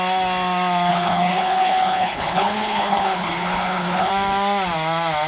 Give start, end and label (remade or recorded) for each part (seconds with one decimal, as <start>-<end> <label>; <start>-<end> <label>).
0.0-0.9 recorded; 0.9-4.1 remade; 4.1-5.3 recorded